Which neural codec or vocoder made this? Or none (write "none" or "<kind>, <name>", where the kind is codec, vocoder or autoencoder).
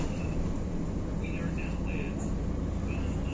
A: none